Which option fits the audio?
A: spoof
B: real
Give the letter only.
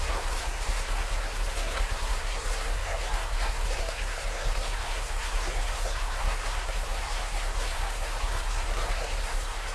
A